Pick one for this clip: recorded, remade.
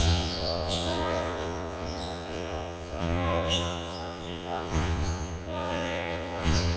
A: remade